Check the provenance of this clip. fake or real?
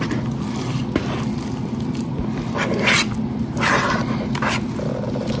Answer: real